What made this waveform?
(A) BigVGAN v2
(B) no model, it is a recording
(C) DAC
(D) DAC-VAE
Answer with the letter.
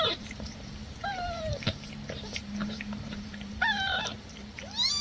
A